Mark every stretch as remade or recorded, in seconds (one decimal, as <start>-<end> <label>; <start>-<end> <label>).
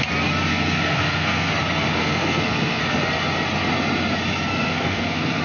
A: 0.0-0.5 recorded; 0.5-1.5 remade; 1.5-2.0 recorded; 2.0-2.8 remade; 2.8-4.5 recorded; 4.5-5.4 remade